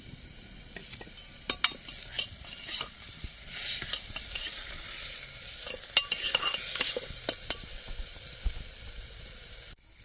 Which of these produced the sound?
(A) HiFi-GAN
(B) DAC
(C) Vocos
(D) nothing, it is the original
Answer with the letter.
D